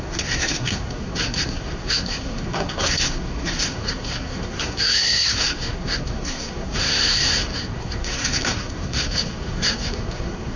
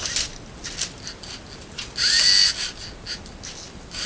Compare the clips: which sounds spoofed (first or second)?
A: first